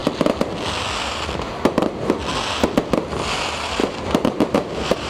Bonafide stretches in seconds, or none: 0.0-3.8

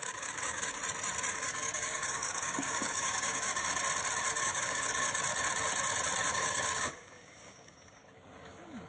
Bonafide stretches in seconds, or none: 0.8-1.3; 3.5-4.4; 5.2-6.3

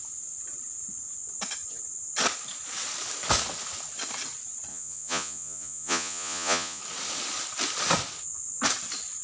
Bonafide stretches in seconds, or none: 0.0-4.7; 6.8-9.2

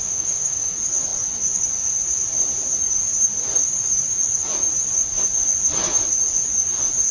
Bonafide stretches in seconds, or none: 0.7-7.1

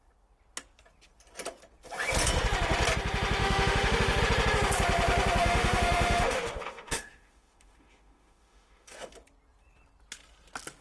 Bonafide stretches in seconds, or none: 0.0-3.4; 4.2-5.4; 9.1-10.8

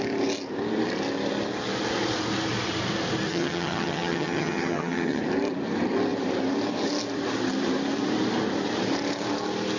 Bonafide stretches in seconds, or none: 0.0-3.3; 5.2-9.8

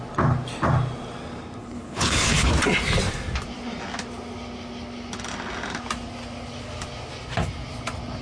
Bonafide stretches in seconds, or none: 0.0-1.6; 2.5-8.2

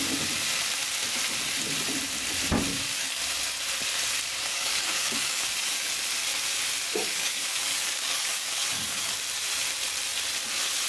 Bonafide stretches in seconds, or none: 0.0-2.7; 3.2-4.5; 5.9-6.9; 9.1-10.9